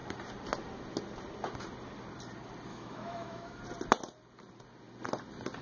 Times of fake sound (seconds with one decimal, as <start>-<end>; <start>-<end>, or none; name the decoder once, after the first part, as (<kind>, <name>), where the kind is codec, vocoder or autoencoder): 2.7-3.6 (autoencoder, DAC-VAE)